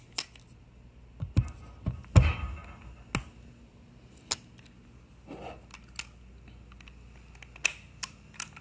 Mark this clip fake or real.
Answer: real